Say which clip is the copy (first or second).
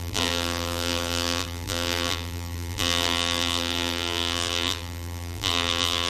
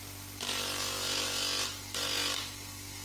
first